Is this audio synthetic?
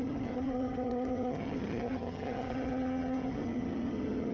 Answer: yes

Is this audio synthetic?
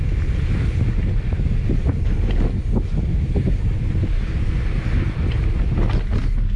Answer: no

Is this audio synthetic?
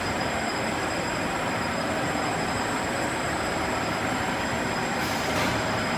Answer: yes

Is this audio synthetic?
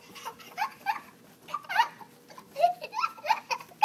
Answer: no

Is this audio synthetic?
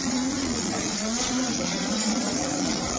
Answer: yes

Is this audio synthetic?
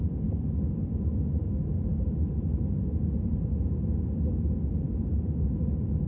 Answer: no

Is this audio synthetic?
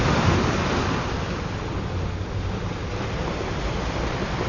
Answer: no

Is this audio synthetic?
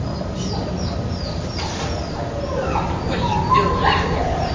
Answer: yes